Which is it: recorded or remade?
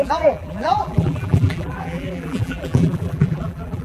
remade